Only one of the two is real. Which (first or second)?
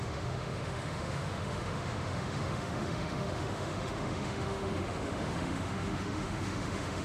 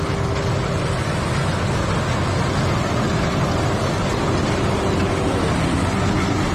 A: second